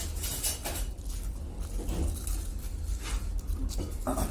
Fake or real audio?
real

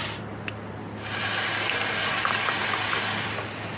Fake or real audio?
real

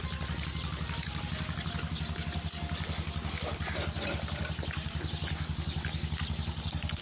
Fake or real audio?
real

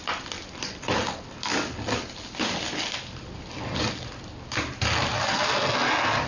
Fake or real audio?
real